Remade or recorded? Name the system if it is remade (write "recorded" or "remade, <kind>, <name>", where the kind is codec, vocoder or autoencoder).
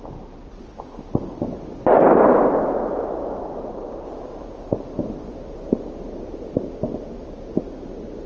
recorded